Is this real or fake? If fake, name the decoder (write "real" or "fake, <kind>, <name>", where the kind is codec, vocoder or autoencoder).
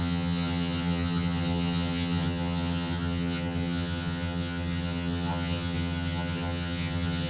fake, vocoder, HiFi-GAN